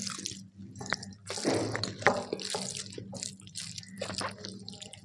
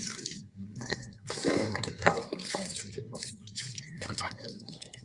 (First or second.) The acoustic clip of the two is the first